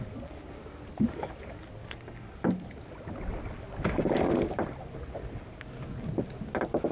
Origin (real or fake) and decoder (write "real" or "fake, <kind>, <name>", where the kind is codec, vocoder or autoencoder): real